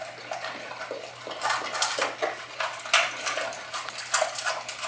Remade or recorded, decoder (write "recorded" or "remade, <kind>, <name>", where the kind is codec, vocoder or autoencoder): recorded